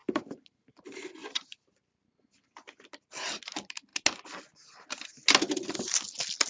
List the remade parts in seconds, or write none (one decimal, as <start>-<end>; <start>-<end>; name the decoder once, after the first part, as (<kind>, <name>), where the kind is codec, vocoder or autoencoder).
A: none